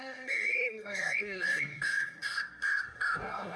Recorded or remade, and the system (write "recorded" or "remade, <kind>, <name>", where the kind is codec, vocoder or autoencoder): remade, codec, SNAC